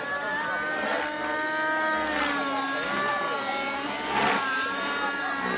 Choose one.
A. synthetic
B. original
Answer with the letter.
B